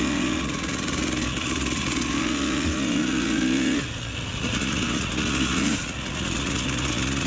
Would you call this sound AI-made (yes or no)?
yes